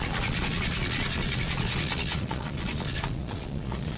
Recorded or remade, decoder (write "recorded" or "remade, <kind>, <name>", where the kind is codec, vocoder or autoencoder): remade, vocoder, Vocos